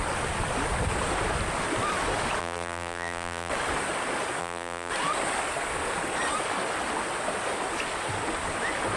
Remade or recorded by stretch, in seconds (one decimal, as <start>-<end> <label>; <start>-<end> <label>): 0.0-2.4 recorded; 2.4-3.5 remade; 3.5-4.4 recorded; 4.4-4.9 remade; 4.9-9.0 recorded